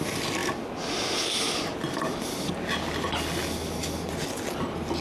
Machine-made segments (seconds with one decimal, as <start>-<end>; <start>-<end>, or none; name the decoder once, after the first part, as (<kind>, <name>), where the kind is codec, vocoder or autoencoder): none